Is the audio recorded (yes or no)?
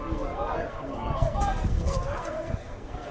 no